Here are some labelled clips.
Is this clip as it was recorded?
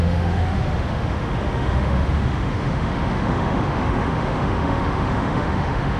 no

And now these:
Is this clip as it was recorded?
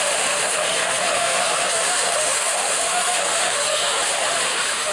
no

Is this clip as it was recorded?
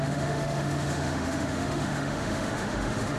no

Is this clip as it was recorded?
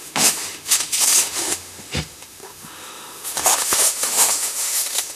no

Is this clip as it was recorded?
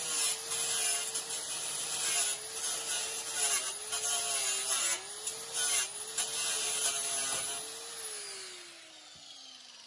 yes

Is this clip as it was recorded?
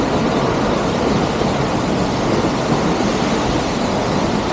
yes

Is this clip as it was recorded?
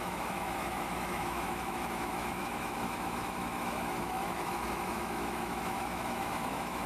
no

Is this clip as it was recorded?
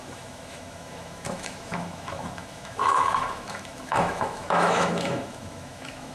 no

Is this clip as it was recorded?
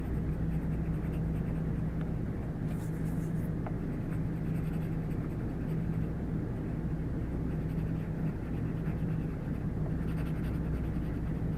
yes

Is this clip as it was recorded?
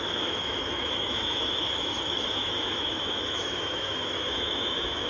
no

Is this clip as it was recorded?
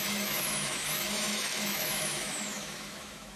no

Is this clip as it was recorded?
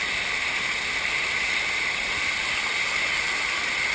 yes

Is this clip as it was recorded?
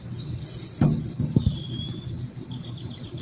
yes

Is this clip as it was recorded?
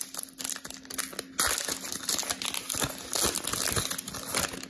yes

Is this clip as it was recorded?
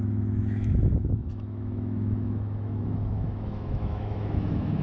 no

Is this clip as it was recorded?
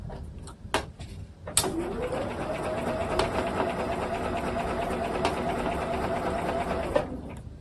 yes